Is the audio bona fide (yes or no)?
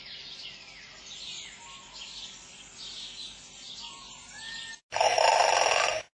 yes